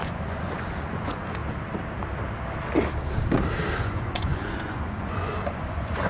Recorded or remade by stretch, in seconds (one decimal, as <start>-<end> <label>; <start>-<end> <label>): 0.0-1.4 remade; 1.4-3.8 recorded; 3.8-6.1 remade